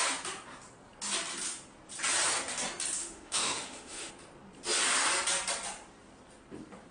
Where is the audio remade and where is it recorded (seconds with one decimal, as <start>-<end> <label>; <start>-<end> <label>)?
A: 0.0-3.0 recorded; 3.0-4.1 remade; 4.1-6.9 recorded